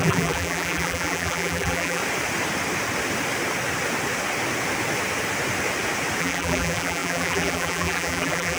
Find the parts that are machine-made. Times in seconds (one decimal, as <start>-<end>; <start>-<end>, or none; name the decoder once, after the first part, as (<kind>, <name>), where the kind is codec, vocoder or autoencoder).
0.0-2.0 (vocoder, BigVGAN v2); 6.2-8.6